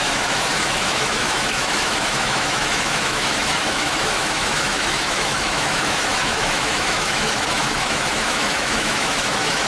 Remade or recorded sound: remade